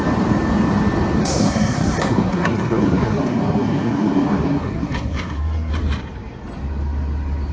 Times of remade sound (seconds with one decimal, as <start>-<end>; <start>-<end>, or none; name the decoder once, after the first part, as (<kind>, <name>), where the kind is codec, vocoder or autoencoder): 1.2-5.7 (codec, SNAC)

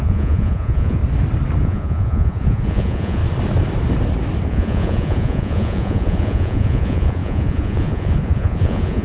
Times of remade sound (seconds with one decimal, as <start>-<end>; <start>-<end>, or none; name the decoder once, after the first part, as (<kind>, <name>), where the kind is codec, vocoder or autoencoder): 0.0-1.0 (vocoder, Vocos); 1.6-3.2; 4.5-9.0

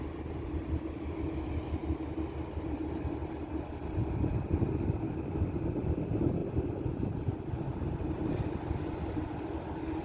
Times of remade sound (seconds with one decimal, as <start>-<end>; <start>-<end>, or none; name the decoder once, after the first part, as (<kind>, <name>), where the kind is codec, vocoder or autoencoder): 1.8-2.8 (vocoder, BigVGAN v2); 6.4-7.4

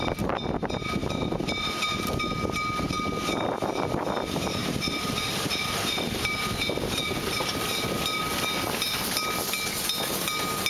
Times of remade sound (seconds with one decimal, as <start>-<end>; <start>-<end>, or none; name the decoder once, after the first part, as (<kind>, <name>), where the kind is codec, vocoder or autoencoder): 1.0-2.2 (vocoder, BigVGAN v2); 4.6-5.2